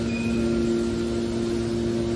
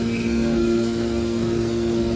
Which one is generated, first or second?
second